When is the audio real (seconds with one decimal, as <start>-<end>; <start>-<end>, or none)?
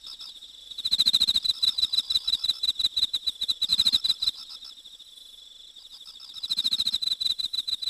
0.0-7.9